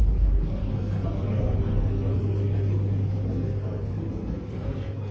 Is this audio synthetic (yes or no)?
yes